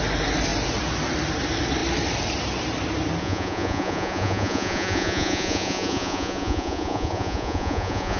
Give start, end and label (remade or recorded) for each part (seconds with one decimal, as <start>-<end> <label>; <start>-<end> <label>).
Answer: 0.0-3.2 recorded; 3.2-8.2 remade